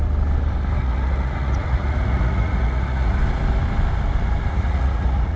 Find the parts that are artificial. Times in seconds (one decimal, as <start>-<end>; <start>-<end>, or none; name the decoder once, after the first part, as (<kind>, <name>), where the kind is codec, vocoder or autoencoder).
0.8-3.2 (vocoder, Vocos); 4.5-5.4